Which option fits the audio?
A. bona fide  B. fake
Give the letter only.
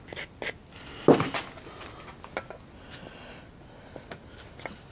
A